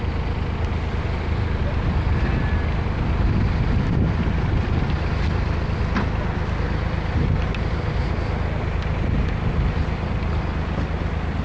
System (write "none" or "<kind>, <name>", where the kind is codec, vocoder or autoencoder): none